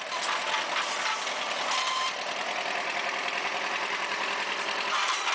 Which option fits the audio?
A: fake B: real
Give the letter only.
B